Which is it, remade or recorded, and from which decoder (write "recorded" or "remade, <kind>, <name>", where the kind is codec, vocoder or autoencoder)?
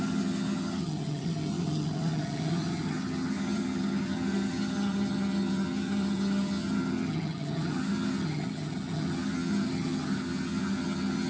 remade, vocoder, HiFi-GAN